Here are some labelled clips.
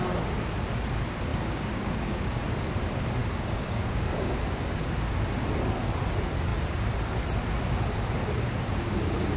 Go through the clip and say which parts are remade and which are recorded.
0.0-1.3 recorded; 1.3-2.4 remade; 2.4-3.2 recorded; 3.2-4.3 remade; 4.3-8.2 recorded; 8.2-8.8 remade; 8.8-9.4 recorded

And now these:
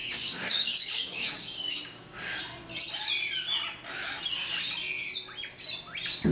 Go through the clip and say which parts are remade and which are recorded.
0.0-2.4 remade; 2.4-6.3 recorded

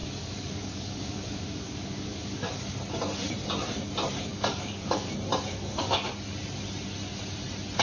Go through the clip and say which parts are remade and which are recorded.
0.0-2.6 remade; 2.6-4.3 recorded; 4.3-5.1 remade; 5.1-5.5 recorded; 5.5-6.1 remade; 6.1-7.8 recorded

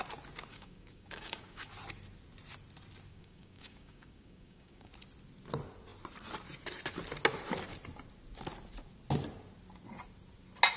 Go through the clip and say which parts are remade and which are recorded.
0.0-0.5 recorded; 0.5-1.7 remade; 1.7-3.1 recorded; 3.1-4.9 remade; 4.9-10.8 recorded

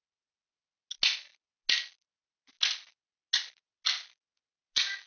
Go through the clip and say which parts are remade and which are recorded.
0.0-5.1 recorded

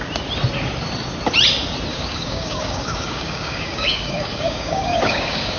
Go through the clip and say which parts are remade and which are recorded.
0.0-1.9 recorded; 1.9-5.6 remade

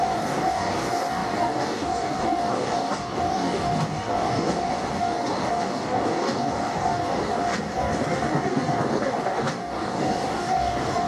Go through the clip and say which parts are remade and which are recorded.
0.0-11.1 remade

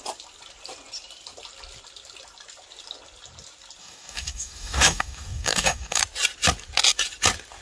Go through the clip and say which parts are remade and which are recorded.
0.0-3.8 recorded; 3.8-6.0 remade; 6.0-7.6 recorded